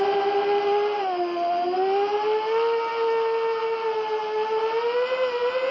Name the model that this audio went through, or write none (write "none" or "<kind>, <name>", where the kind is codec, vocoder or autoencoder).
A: none